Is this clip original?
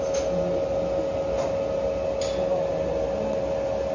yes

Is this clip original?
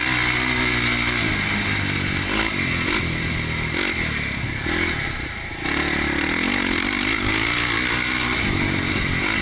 yes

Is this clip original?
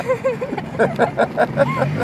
yes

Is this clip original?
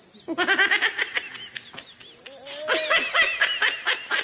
yes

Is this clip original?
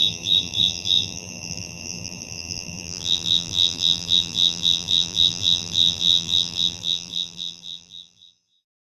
no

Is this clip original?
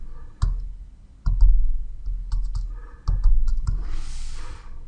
yes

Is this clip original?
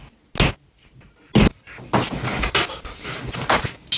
yes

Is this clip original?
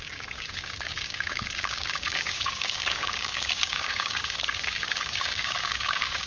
no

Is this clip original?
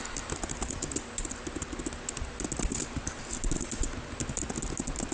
yes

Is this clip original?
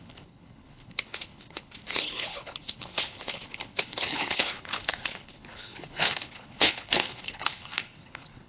no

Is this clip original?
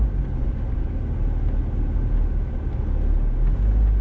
yes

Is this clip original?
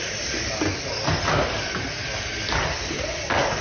yes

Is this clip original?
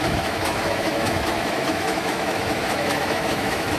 no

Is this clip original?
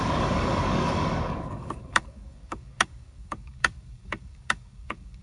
no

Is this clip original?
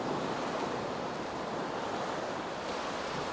yes